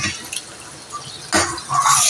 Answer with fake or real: real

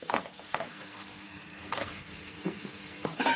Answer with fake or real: fake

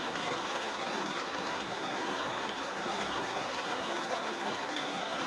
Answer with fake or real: fake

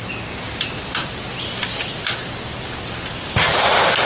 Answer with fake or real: real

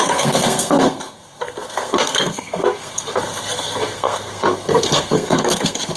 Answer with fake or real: fake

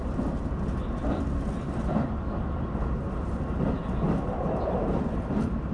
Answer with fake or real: real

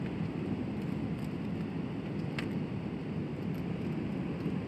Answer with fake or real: real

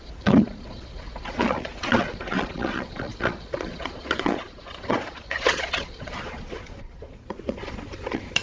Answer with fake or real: fake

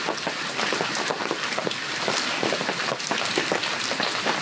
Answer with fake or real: fake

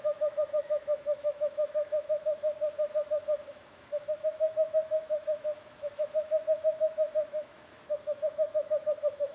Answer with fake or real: fake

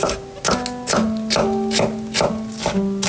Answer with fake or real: real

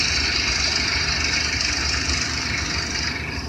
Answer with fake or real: fake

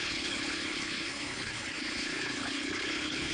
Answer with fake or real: fake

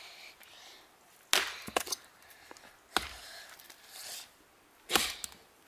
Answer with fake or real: real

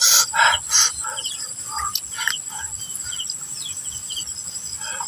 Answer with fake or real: real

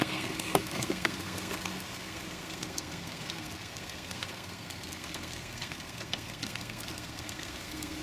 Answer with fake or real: fake